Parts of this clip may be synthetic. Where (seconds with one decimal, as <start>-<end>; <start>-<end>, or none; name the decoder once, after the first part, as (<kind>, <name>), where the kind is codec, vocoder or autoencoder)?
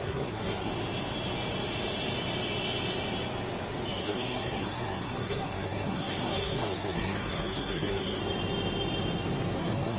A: 0.0-0.7 (codec, SNAC); 3.9-8.2; 9.6-10.0